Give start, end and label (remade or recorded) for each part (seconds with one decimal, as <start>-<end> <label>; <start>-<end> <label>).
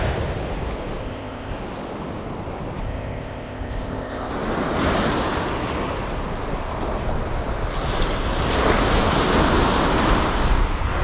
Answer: 0.0-1.0 recorded; 1.0-1.5 remade; 1.5-2.8 recorded; 2.8-4.3 remade; 4.3-11.0 recorded